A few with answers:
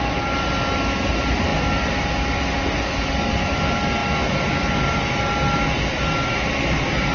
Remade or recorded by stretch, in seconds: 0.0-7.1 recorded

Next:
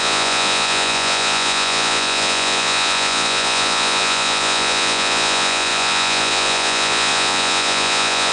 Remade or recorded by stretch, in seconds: 0.0-8.3 remade

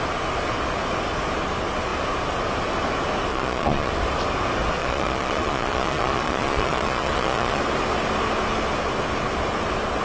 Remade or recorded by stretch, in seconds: 0.0-3.3 recorded; 3.3-3.9 remade; 3.9-4.8 recorded; 4.8-7.6 remade; 7.6-10.0 recorded

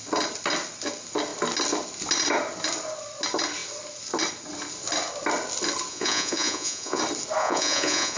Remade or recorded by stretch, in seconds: 0.0-5.9 recorded; 5.9-7.0 remade; 7.0-7.4 recorded; 7.4-8.2 remade

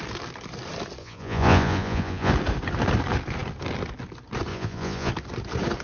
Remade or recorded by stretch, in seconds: 0.0-1.0 recorded; 1.0-2.3 remade; 2.3-4.5 recorded; 4.5-5.1 remade; 5.1-5.8 recorded

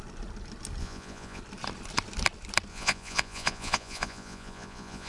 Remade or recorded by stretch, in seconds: 0.0-0.8 recorded; 0.8-1.4 remade; 1.4-2.7 recorded; 2.7-5.1 remade